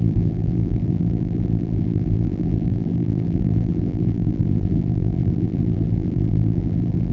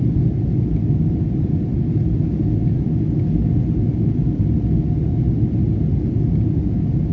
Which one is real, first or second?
second